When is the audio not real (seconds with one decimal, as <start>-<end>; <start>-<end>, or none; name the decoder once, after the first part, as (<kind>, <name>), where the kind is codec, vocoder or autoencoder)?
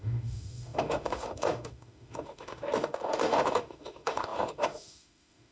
0.0-5.5 (autoencoder, DAC-VAE)